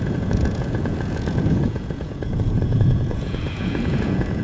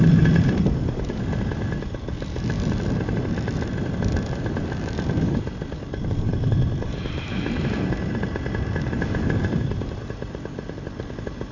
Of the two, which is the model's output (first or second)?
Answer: first